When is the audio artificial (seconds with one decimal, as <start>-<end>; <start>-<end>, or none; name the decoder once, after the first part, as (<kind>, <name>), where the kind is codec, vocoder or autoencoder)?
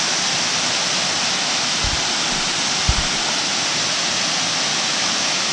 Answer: 4.7-5.5 (autoencoder, DAC-VAE)